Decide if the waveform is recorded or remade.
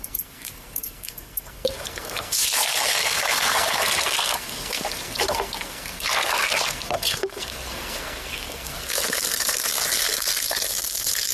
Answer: remade